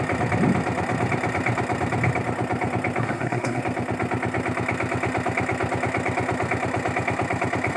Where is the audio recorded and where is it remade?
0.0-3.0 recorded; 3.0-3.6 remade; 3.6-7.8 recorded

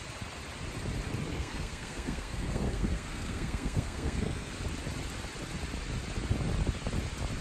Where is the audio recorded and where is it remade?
0.0-1.3 recorded; 1.3-4.5 remade; 4.5-7.4 recorded

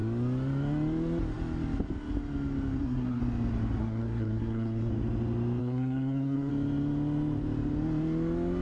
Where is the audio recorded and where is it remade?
0.0-2.8 recorded; 2.8-3.2 remade; 3.2-3.8 recorded; 3.8-4.9 remade; 4.9-5.6 recorded; 5.6-6.5 remade; 6.5-8.6 recorded

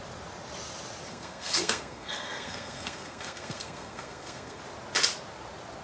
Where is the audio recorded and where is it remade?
0.0-1.1 recorded; 1.1-4.6 remade; 4.6-5.8 recorded

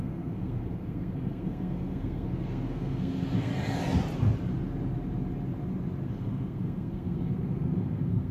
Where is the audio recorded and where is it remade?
0.0-3.5 remade; 3.5-6.1 recorded; 6.1-8.3 remade

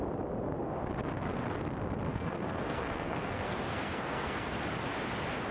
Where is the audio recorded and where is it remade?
0.0-2.1 recorded; 2.1-4.5 remade; 4.5-5.5 recorded